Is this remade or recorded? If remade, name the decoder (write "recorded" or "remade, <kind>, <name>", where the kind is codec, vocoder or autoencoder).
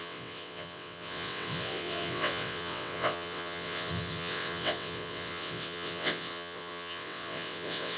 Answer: remade, vocoder, WaveNeXt